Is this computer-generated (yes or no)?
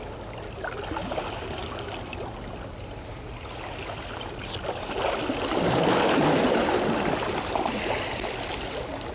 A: no